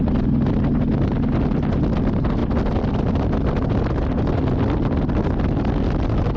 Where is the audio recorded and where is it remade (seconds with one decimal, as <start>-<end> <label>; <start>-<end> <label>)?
0.0-6.4 recorded